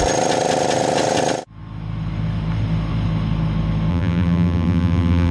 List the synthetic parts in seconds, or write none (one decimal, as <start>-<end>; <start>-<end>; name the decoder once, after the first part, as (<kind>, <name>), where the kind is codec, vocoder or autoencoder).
3.9-5.3 (vocoder, BigVGAN v2)